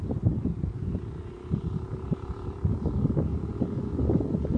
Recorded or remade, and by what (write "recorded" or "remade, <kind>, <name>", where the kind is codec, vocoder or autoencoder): recorded